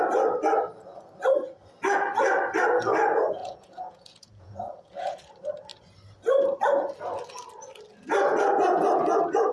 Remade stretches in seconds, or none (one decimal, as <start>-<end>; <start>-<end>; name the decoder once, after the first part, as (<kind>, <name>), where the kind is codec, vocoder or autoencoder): 3.4-5.3 (vocoder, Vocos)